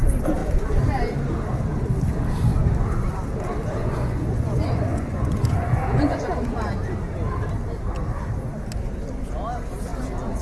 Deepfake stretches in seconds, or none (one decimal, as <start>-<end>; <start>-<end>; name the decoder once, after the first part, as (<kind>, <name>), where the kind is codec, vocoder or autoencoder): 3.8-6.2 (vocoder, Vocos)